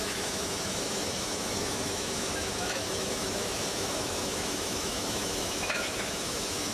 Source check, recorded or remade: remade